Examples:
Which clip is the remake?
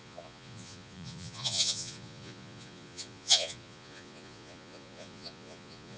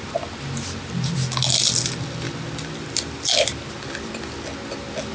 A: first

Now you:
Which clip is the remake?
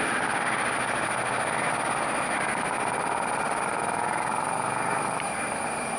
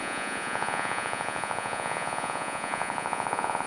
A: second